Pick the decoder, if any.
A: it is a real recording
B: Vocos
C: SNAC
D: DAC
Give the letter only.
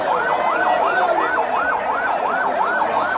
A